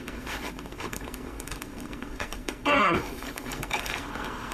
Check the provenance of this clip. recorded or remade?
remade